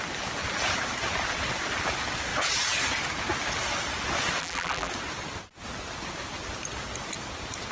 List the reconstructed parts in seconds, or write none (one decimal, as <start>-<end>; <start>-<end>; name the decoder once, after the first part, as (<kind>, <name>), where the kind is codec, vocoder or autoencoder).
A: 4.4-4.9 (vocoder, BigVGAN v2)